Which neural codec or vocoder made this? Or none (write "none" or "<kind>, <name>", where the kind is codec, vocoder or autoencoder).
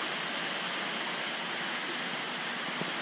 none